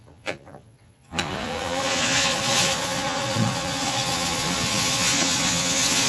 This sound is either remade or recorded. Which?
remade